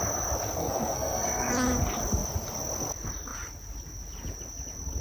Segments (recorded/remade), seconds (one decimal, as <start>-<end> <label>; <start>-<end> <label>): 0.0-0.6 recorded; 0.6-1.5 remade; 1.5-5.0 recorded